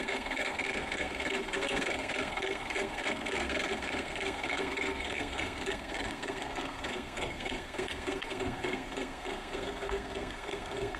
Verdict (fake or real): fake